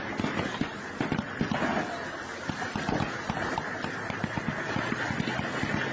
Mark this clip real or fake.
real